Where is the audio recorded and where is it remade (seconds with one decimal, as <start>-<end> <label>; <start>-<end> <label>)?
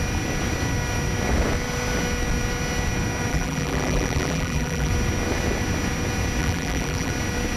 0.0-3.3 recorded; 3.3-4.9 remade; 4.9-6.4 recorded; 6.4-7.1 remade; 7.1-7.6 recorded